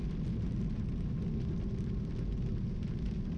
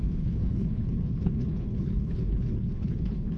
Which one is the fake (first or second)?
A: second